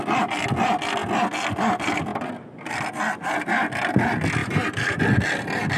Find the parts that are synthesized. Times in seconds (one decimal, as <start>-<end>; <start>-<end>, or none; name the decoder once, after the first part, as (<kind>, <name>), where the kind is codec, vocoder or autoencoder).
4.4-5.0 (vocoder, BigVGAN v2)